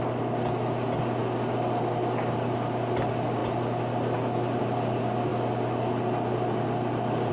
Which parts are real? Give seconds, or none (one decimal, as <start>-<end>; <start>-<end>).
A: 0.0-7.3